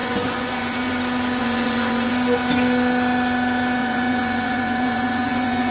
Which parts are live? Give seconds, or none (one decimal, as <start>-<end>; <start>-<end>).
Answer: 0.9-1.4; 2.1-3.8